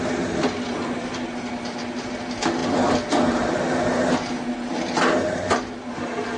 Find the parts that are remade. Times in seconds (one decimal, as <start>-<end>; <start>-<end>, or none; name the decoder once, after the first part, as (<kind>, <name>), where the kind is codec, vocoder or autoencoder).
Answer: none